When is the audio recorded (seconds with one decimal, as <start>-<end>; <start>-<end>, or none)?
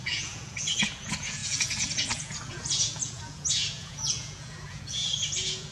none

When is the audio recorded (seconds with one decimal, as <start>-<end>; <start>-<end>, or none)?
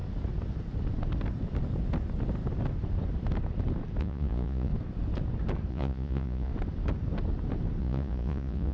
0.0-4.0; 4.7-5.7; 6.5-7.8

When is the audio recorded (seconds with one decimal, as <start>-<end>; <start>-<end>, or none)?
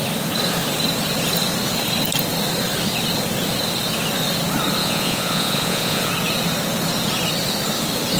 0.0-4.8; 6.1-8.2